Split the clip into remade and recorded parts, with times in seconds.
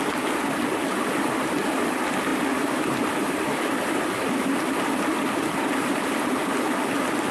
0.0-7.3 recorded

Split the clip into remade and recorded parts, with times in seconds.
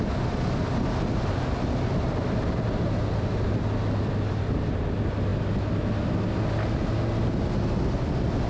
0.0-8.5 recorded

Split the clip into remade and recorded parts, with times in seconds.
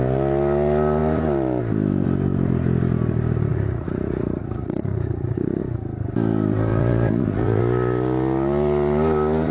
0.0-3.5 recorded; 3.5-5.6 remade; 5.6-6.7 recorded; 6.7-7.6 remade; 7.6-9.5 recorded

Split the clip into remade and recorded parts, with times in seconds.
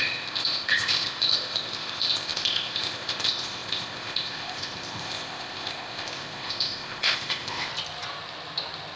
0.0-7.7 remade; 7.7-9.0 recorded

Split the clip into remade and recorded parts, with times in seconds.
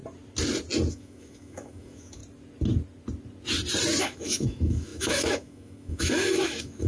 0.0-0.9 recorded; 0.9-2.2 remade; 2.2-4.0 recorded; 4.0-6.9 remade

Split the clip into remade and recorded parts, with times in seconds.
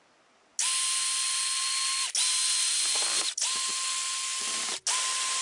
0.0-5.4 recorded